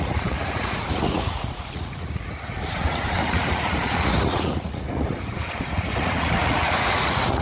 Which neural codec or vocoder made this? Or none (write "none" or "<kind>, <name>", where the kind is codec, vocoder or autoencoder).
vocoder, Vocos